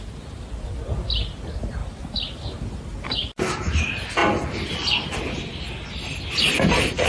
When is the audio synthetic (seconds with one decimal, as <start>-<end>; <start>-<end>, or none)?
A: 1.8-3.5